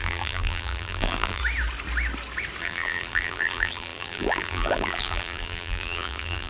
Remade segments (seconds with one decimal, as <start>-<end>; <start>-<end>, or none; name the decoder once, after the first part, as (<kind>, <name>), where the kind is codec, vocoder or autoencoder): 0.0-1.4 (vocoder, BigVGAN v2); 2.6-6.5